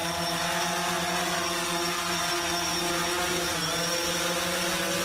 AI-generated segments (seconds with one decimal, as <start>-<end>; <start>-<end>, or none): 2.7-3.7